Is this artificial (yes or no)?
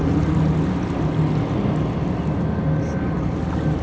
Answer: no